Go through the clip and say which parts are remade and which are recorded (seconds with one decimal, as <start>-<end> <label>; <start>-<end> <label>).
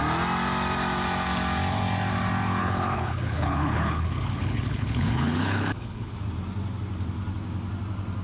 0.0-2.6 recorded; 2.6-6.1 remade; 6.1-8.2 recorded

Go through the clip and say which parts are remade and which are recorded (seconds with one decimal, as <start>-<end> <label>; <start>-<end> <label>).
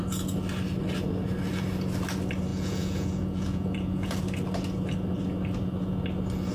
0.0-2.5 recorded; 2.5-4.2 remade; 4.2-6.5 recorded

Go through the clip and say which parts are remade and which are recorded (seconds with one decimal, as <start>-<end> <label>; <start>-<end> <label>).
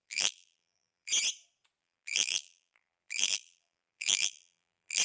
0.0-1.1 remade; 1.1-1.8 recorded; 1.8-5.0 remade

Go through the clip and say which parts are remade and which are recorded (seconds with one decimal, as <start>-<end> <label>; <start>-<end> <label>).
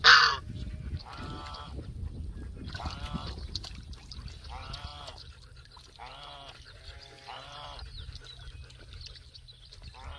0.0-10.2 recorded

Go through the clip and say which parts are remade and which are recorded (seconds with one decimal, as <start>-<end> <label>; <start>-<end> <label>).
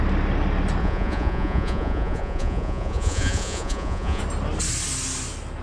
0.0-0.8 recorded; 0.8-4.2 remade; 4.2-5.6 recorded